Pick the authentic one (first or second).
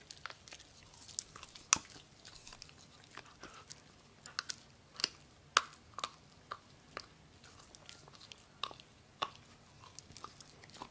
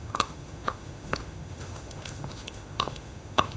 first